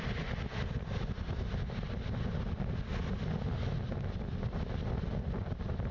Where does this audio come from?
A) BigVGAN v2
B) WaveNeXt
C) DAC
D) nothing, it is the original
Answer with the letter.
D